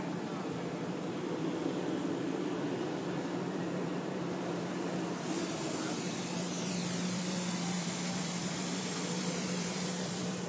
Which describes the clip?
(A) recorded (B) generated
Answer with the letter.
B